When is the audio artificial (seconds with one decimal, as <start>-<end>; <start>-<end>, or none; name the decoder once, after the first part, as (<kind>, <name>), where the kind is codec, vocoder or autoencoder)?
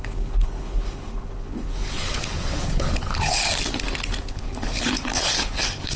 0.0-3.4 (codec, HILCodec); 4.3-6.0